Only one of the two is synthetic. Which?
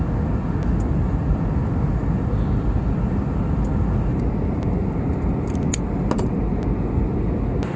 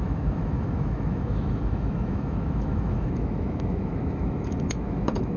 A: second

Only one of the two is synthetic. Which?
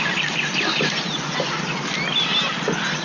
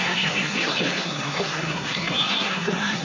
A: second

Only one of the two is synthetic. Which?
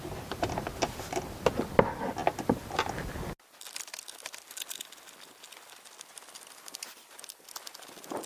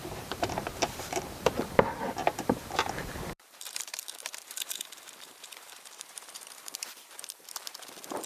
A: second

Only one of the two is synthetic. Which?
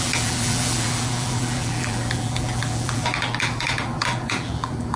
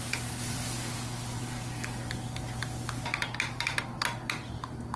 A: first